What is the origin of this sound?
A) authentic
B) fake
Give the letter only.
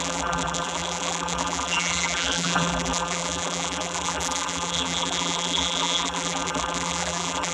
B